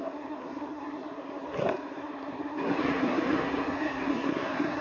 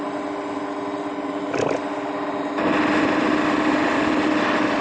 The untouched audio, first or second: second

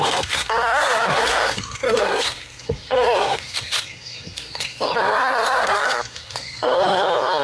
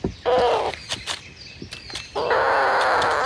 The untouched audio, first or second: second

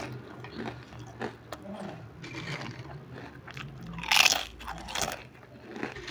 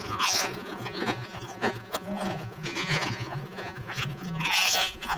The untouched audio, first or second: first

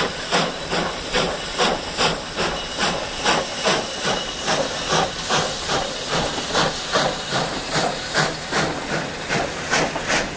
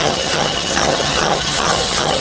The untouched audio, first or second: first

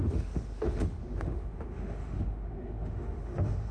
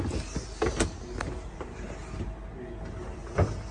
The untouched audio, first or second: second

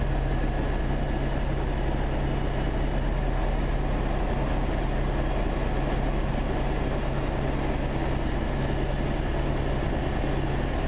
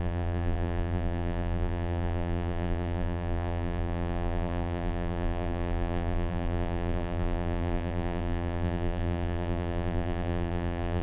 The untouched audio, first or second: first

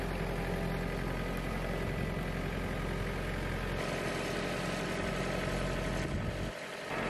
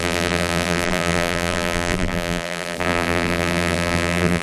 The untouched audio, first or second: first